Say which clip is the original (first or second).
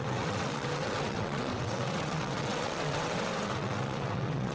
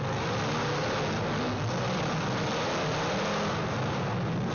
second